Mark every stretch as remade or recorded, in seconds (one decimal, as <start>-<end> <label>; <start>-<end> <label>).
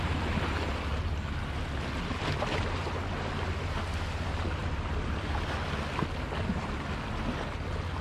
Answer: 0.0-4.6 recorded; 4.6-5.4 remade; 5.4-8.0 recorded